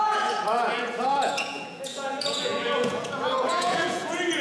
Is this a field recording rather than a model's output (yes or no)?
no